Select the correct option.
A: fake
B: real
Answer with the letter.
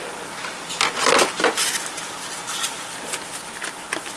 B